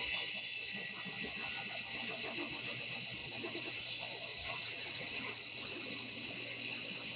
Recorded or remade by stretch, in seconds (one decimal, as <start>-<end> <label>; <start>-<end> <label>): 0.0-3.2 recorded; 3.2-3.8 remade; 3.8-4.3 recorded; 4.3-6.3 remade; 6.3-7.2 recorded